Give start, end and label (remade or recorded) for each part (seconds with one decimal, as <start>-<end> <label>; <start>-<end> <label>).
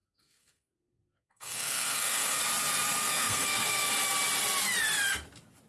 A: 0.0-2.4 remade; 2.4-3.0 recorded; 3.0-3.9 remade; 3.9-5.7 recorded